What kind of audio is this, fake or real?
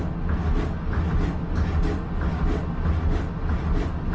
real